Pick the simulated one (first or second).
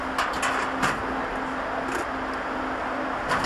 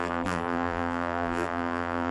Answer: second